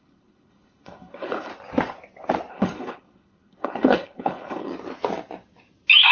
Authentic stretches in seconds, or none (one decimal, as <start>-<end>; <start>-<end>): 1.5-2.5; 4.7-6.1

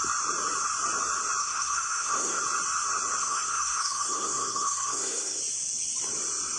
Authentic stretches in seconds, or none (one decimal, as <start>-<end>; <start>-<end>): 0.0-1.4; 2.4-3.2; 5.4-6.6

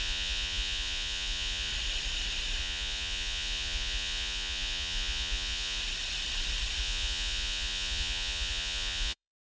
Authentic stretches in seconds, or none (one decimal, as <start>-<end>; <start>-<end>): 1.7-2.6; 5.8-6.8

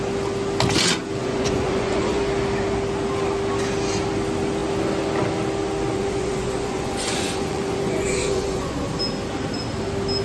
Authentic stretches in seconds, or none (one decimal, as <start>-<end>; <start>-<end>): 0.0-1.2; 2.3-5.9; 8.8-10.2

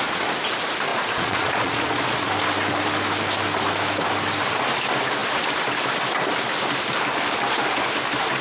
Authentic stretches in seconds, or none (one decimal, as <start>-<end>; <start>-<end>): 0.0-0.9; 2.3-8.4

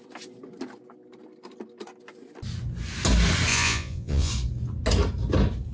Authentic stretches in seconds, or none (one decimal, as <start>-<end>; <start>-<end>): 0.0-3.5; 4.3-5.7